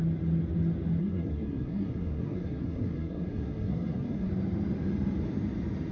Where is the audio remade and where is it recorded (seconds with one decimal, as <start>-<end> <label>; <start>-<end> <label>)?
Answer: 0.0-1.0 recorded; 1.0-4.3 remade; 4.3-5.9 recorded